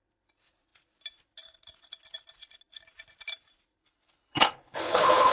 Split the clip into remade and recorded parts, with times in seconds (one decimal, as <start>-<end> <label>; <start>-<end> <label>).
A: 0.0-3.8 recorded; 3.8-5.3 remade

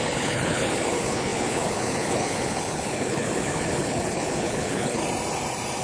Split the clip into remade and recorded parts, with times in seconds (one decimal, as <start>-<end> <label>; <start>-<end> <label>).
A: 0.0-5.0 remade; 5.0-5.8 recorded

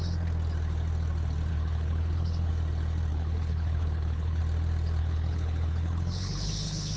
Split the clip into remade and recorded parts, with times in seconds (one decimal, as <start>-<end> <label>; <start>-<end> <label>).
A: 0.0-1.5 recorded; 1.5-2.5 remade; 2.5-3.1 recorded; 3.1-4.4 remade; 4.4-5.0 recorded; 5.0-7.0 remade